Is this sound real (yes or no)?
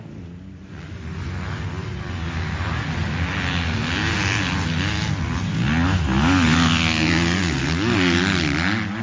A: yes